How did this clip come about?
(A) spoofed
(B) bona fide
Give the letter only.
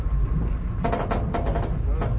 B